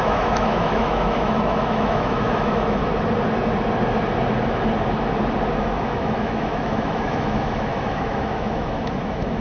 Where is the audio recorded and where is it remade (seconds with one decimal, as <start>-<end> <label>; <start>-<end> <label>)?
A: 0.0-2.8 remade; 2.8-5.6 recorded; 5.6-9.4 remade